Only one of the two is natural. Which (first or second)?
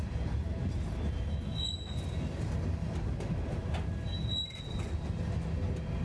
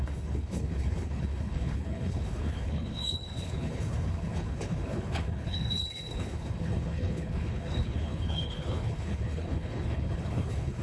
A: first